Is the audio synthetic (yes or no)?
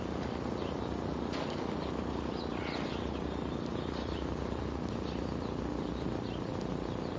no